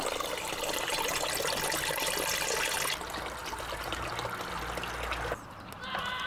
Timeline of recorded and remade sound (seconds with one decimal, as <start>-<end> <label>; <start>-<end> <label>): 0.0-3.4 recorded; 3.4-4.1 remade; 4.1-6.3 recorded

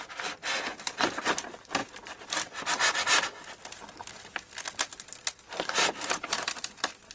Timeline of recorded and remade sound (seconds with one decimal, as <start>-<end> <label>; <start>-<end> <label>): 0.0-7.1 recorded

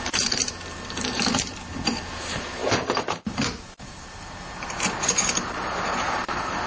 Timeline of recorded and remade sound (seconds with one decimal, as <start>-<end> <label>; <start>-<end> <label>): 0.0-6.7 remade

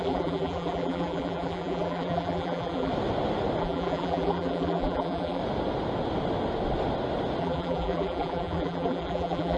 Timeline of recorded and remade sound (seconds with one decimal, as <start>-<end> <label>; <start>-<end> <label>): 0.0-2.9 remade; 2.9-3.6 recorded; 3.6-5.4 remade; 5.4-7.4 recorded; 7.4-9.6 remade

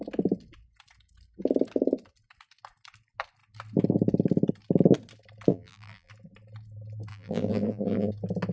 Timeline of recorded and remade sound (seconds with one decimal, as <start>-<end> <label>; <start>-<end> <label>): 0.0-5.5 recorded; 5.5-6.1 remade; 6.1-7.1 recorded; 7.1-8.1 remade; 8.1-8.5 recorded

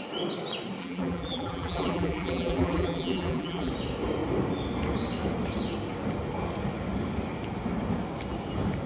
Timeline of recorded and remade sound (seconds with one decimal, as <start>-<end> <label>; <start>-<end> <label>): 0.0-0.8 recorded; 0.8-3.7 remade; 3.7-8.9 recorded